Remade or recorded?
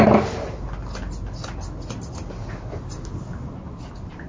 recorded